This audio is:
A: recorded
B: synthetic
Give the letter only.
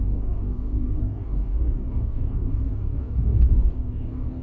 B